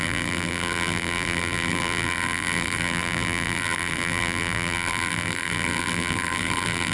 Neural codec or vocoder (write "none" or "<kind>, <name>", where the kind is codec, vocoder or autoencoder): vocoder, BigVGAN v2